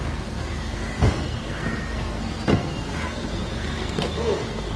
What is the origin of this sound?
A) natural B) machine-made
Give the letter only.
B